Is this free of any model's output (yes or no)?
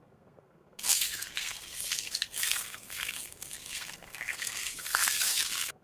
no